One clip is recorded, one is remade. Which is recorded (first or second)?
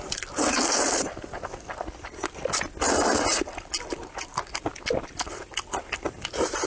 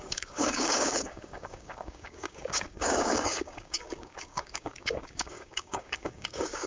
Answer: first